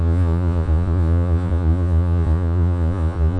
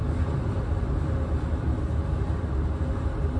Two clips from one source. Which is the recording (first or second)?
second